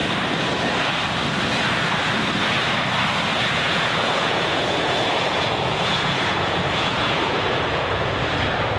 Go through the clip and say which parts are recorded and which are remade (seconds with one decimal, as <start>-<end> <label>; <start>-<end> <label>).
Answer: 0.0-3.3 recorded; 3.3-8.1 remade; 8.1-8.8 recorded